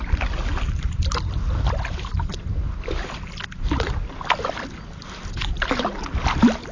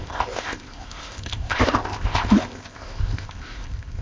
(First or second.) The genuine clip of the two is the first